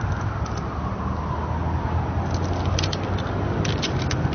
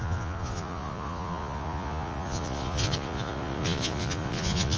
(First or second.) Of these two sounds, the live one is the first